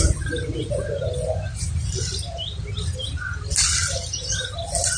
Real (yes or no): yes